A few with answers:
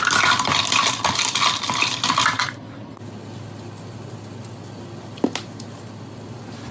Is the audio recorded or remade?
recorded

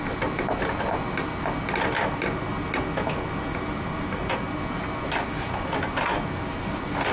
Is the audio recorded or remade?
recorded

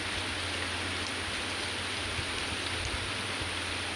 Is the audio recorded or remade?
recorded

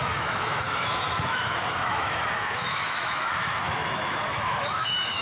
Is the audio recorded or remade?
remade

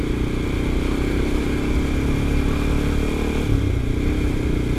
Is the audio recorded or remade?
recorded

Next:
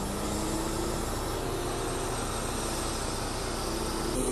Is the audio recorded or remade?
recorded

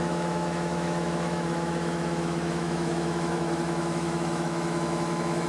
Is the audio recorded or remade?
remade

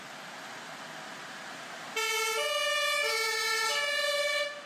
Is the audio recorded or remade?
recorded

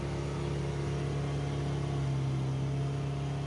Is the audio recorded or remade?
recorded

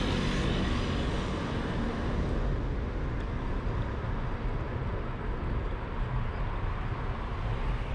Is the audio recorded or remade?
recorded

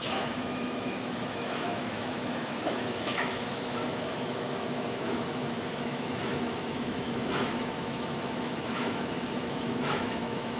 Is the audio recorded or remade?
remade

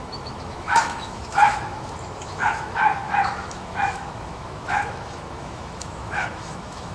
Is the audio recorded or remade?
remade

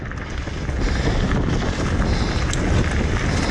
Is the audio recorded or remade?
recorded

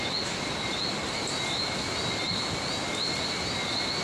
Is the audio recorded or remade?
recorded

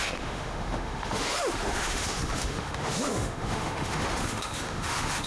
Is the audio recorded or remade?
remade